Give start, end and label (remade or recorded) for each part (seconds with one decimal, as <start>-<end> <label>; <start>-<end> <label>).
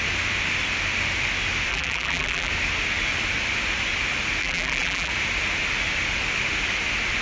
0.0-1.7 recorded; 1.7-2.5 remade; 2.5-4.4 recorded; 4.4-5.1 remade; 5.1-7.2 recorded